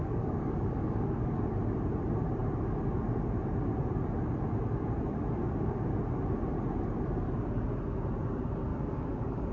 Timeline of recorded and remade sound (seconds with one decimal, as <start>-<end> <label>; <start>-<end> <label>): 0.0-1.4 remade; 1.4-8.7 recorded; 8.7-9.5 remade